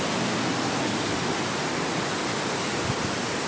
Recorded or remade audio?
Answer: recorded